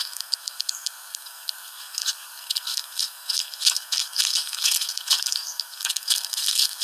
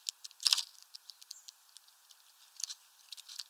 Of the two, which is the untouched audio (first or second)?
second